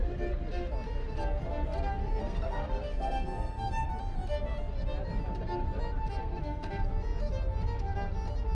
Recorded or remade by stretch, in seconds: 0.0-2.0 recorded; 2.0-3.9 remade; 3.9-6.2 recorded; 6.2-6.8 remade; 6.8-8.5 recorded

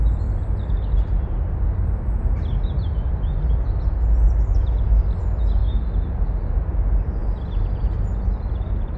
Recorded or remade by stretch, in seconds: 0.0-9.0 recorded

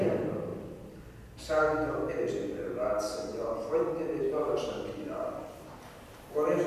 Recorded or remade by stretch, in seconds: 0.0-6.7 recorded

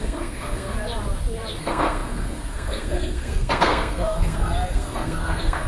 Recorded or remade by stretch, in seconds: 0.0-0.7 remade; 0.7-1.6 recorded; 1.6-5.7 remade

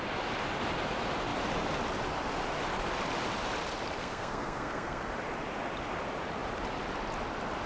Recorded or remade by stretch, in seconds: 0.0-4.0 recorded; 4.0-5.0 remade; 5.0-7.7 recorded

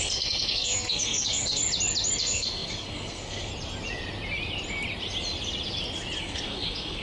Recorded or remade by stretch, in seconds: 0.0-1.6 remade; 1.6-2.2 recorded; 2.2-3.5 remade; 3.5-6.2 recorded; 6.2-7.0 remade

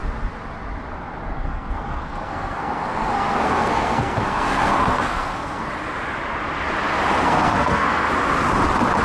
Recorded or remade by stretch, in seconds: 0.0-1.3 recorded; 1.3-5.7 remade; 5.7-7.2 recorded; 7.2-8.1 remade; 8.1-9.0 recorded

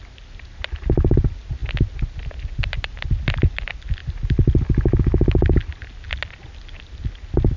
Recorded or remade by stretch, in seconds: 0.0-7.6 recorded